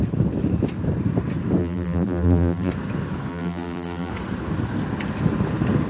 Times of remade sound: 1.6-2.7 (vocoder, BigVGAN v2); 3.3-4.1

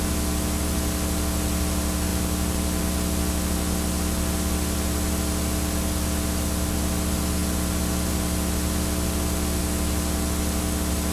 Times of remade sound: none

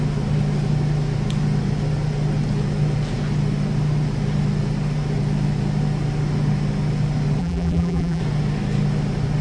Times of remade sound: 7.4-8.2 (vocoder, BigVGAN v2)